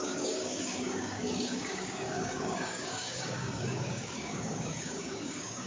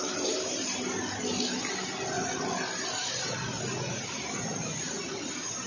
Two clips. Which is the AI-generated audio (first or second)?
first